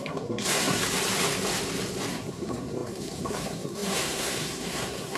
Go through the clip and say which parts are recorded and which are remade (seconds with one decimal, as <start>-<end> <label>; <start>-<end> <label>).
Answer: 0.0-0.8 remade; 0.8-2.1 recorded; 2.1-5.2 remade